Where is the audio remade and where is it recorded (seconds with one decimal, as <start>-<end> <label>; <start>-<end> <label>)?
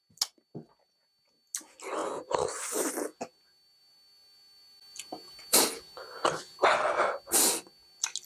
0.0-8.3 recorded